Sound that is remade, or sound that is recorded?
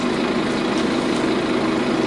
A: recorded